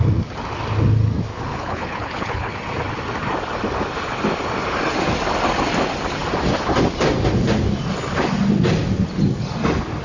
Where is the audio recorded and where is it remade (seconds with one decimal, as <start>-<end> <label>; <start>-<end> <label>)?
0.0-1.3 recorded; 1.3-2.5 remade; 2.5-10.0 recorded